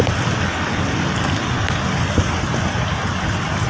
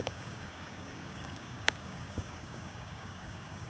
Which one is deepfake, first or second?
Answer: second